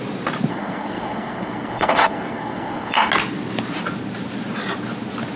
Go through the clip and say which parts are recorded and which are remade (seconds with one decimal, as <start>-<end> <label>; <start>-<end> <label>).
0.0-0.5 recorded; 0.5-3.1 remade; 3.1-5.4 recorded